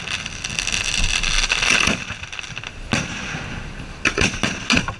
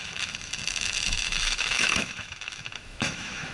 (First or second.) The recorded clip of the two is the first